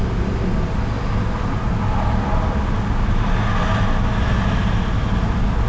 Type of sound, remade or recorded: recorded